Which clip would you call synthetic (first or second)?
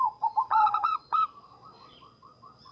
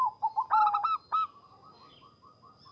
first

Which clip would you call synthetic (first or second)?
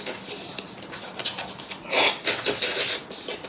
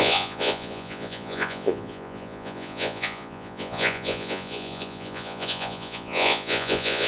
second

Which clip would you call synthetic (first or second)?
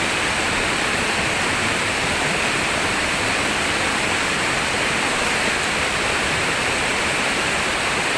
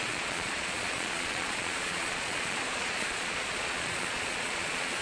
second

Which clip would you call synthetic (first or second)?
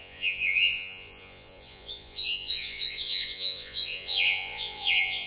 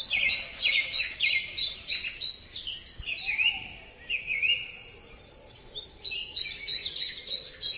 first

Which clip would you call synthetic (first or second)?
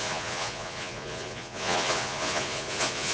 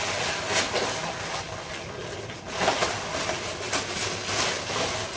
first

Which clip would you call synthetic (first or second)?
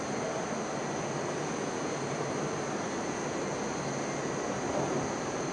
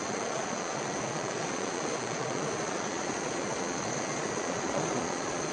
second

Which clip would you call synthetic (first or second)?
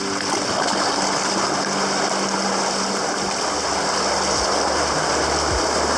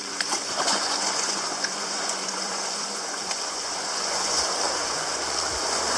second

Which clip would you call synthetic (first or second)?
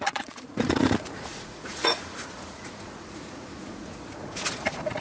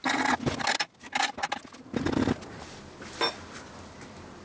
first